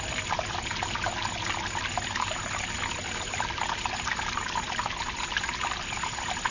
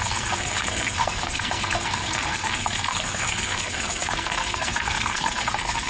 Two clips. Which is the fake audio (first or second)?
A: second